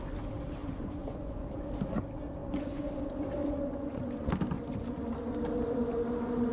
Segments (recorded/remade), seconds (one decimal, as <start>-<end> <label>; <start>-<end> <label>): 0.0-0.6 recorded; 0.6-1.6 remade; 1.6-2.4 recorded; 2.4-2.9 remade; 2.9-3.4 recorded; 3.4-4.3 remade; 4.3-6.5 recorded